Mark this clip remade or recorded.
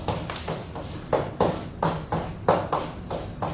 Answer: recorded